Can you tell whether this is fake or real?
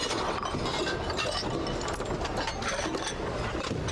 real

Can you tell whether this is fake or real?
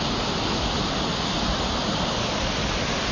real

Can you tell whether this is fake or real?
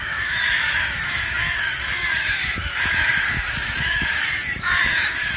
fake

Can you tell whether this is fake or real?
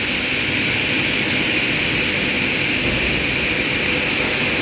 real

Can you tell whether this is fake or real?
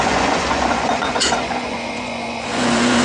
fake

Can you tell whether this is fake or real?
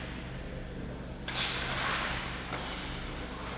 real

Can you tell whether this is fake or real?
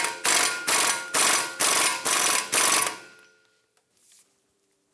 real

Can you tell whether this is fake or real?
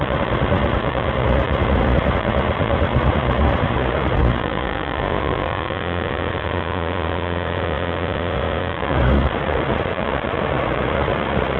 fake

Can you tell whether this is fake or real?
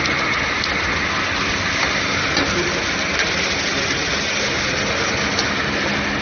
real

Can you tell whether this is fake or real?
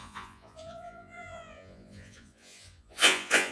fake